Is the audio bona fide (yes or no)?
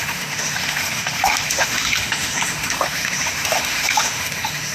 no